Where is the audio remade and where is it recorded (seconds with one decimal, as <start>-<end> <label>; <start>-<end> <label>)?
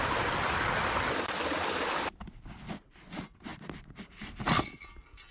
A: 0.0-5.3 recorded